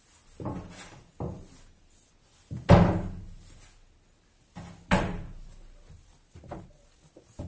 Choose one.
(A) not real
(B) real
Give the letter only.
B